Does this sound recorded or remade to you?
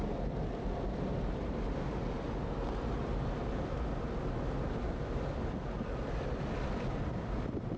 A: recorded